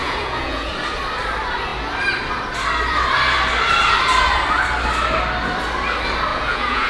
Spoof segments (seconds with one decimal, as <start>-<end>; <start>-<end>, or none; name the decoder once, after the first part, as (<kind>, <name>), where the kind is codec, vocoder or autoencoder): 0.0-0.7 (vocoder, Vocos); 6.3-6.9